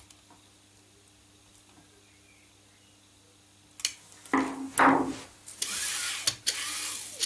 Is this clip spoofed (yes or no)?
no